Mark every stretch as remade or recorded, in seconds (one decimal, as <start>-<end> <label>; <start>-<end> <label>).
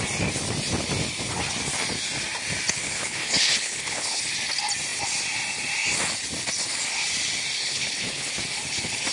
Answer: 0.0-2.8 recorded; 2.8-4.2 remade; 4.2-7.6 recorded; 7.6-8.3 remade; 8.3-9.1 recorded